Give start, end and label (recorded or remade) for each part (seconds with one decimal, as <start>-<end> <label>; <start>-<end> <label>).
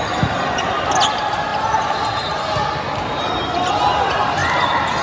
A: 0.0-5.0 recorded